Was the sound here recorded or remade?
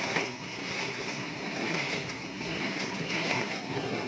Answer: remade